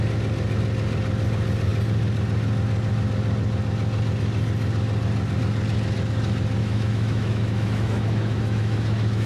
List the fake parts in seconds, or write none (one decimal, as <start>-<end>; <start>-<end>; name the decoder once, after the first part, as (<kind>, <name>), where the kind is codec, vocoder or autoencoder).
6.6-9.3 (autoencoder, DAC-VAE)